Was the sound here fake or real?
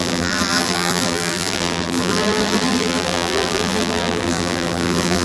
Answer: fake